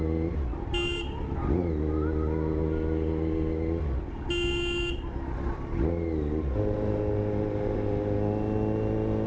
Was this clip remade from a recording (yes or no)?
no